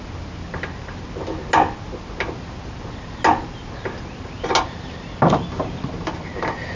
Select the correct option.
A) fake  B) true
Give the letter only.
B